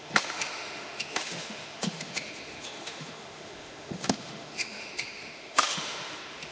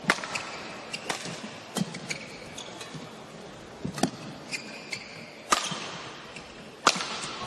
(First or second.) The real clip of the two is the second